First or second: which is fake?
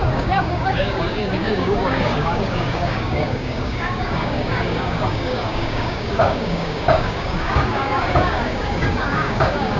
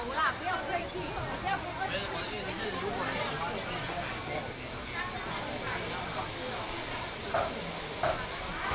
first